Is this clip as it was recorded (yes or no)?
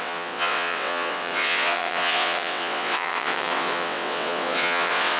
no